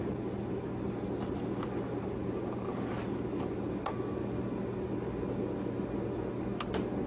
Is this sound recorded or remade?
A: recorded